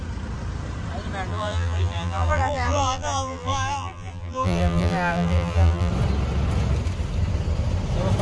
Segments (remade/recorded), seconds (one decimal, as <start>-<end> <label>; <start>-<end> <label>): 0.0-1.3 recorded; 1.3-5.9 remade; 5.9-8.2 recorded